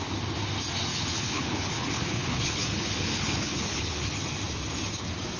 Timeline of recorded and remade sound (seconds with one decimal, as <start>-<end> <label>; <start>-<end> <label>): 0.0-0.9 recorded; 0.9-4.1 remade; 4.1-5.4 recorded